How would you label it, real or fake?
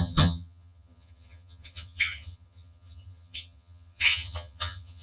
fake